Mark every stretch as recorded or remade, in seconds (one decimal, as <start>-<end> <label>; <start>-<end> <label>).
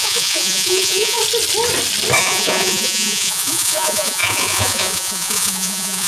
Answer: 0.0-1.2 remade; 1.2-2.2 recorded; 2.2-6.1 remade